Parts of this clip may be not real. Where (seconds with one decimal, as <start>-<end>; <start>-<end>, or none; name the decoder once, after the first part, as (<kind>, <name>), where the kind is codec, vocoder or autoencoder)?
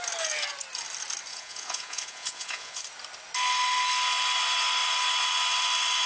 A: 1.3-2.8 (vocoder, Vocos)